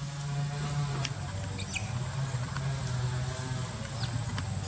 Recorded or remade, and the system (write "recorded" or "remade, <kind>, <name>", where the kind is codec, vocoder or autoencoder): recorded